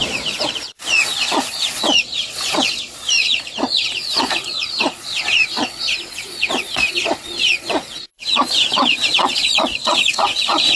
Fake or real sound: fake